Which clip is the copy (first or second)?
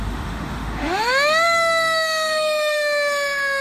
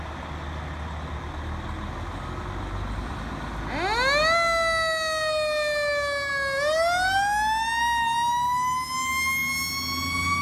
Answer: first